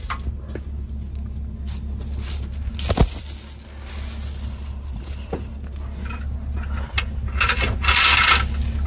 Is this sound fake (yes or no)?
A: no